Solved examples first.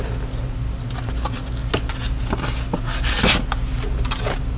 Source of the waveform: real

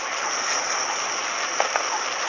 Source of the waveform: real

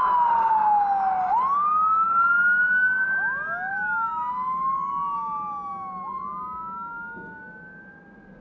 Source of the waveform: real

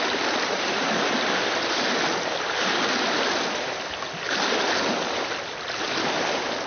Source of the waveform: real